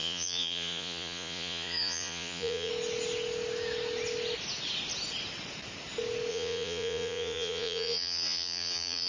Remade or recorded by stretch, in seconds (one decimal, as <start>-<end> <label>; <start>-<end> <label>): 0.0-2.7 remade; 2.7-6.3 recorded; 6.3-9.1 remade